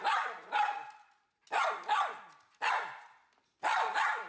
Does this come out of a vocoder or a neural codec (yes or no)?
no